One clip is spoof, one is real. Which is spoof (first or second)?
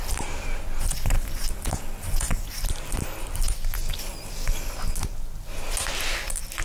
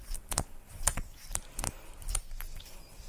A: second